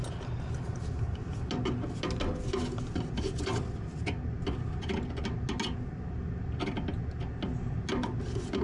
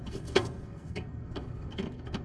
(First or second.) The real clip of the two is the first